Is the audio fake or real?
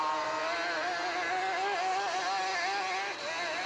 real